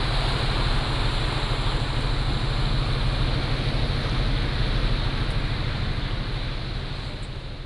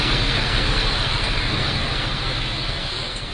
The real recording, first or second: first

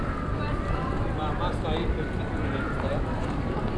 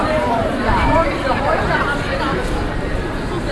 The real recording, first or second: first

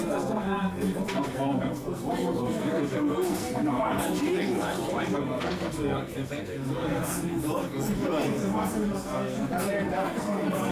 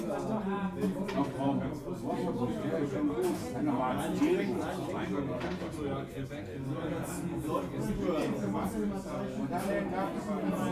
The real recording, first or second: second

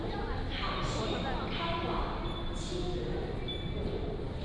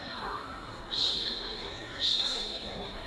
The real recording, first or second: first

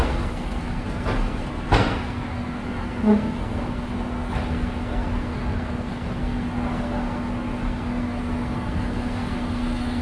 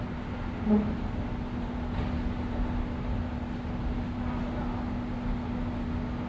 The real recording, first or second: second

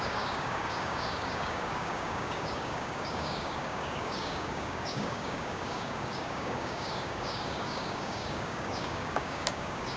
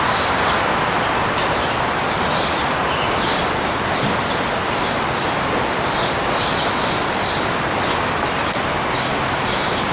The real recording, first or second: second